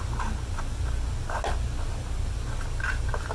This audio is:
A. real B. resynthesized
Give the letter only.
A